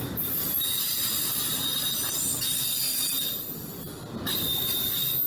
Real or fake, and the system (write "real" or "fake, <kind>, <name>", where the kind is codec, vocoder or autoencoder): real